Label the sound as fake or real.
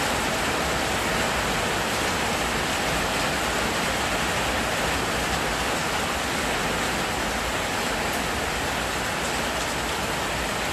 real